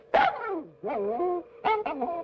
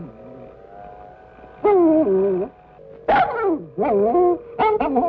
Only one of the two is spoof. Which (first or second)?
first